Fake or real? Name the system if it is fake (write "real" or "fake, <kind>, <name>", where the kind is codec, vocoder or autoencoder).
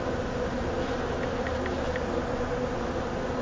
real